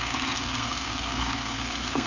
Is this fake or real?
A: fake